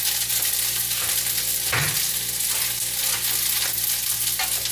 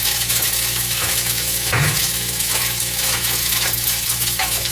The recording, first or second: first